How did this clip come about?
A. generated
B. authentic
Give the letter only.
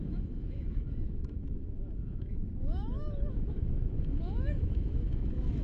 A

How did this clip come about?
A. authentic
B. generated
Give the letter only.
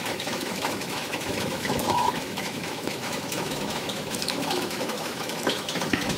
B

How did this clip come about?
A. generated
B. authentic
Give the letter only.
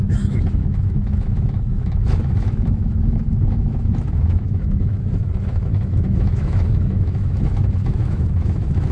A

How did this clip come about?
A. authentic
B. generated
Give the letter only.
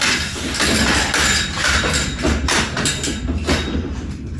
A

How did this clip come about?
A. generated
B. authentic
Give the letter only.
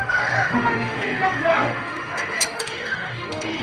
A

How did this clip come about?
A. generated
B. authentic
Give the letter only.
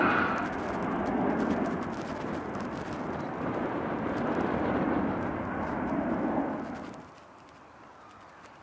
B